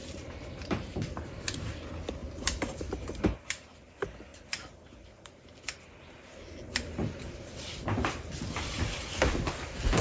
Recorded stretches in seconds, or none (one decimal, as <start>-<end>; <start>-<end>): 0.0-0.9; 1.7-2.2; 3.1-10.0